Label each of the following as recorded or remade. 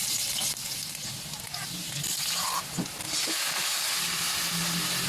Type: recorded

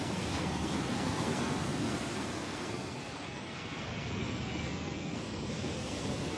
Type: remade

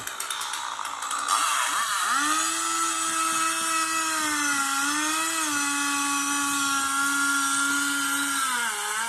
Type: recorded